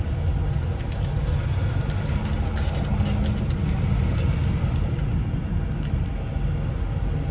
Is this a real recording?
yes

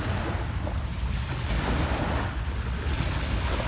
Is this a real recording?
yes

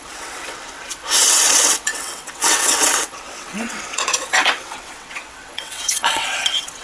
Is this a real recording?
no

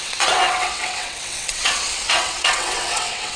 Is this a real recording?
no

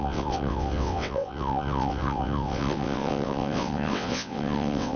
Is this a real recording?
no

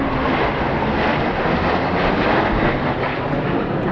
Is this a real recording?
yes